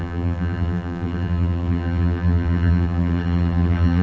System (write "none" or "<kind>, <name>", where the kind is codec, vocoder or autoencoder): vocoder, BigVGAN v2